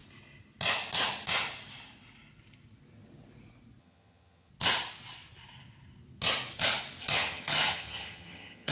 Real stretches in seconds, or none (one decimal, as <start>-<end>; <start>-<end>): 0.0-3.8; 4.5-7.0